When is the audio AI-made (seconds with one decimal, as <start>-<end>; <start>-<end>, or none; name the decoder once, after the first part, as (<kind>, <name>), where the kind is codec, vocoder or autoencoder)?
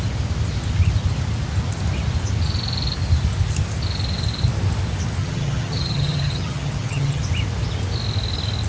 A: 5.2-7.2 (vocoder, HiFi-GAN)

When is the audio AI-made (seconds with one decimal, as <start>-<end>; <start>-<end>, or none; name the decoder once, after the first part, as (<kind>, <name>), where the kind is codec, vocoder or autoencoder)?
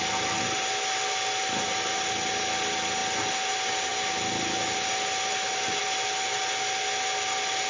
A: none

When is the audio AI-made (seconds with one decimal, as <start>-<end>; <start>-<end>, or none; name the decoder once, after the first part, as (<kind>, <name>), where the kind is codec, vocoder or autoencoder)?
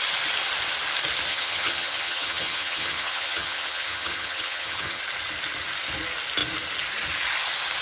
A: 1.3-5.0 (vocoder, HiFi-GAN)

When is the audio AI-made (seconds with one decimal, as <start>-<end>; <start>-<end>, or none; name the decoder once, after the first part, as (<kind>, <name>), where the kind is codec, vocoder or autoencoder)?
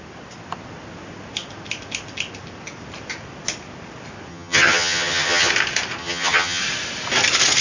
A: 4.3-5.5 (vocoder, HiFi-GAN); 6.0-6.6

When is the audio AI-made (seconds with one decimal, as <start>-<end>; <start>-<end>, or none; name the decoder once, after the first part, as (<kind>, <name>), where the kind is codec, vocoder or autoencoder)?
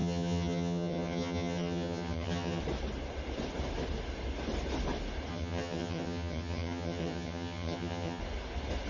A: 0.0-2.6 (vocoder, HiFi-GAN); 5.3-8.2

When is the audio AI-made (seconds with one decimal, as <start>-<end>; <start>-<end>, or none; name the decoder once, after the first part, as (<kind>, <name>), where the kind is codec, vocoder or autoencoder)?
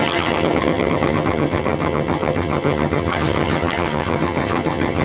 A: 0.0-5.0 (vocoder, HiFi-GAN)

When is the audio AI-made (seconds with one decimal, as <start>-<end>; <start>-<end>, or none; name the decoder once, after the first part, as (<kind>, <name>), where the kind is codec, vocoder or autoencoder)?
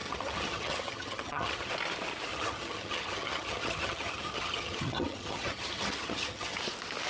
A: 0.0-1.7 (vocoder, HiFi-GAN); 2.3-6.6